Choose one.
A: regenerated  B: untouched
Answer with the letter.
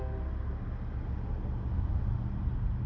B